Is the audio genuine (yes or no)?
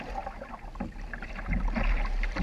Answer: yes